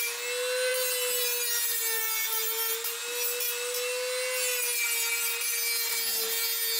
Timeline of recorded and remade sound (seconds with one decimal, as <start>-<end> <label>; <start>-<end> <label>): 0.0-6.8 recorded